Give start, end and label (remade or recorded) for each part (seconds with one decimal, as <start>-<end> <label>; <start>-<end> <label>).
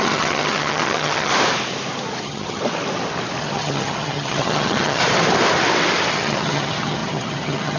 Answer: 0.0-1.3 remade; 1.3-2.2 recorded; 2.2-2.6 remade; 2.6-3.4 recorded; 3.4-5.0 remade; 5.0-6.1 recorded; 6.1-7.8 remade